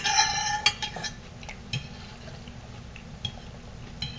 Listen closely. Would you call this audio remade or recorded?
recorded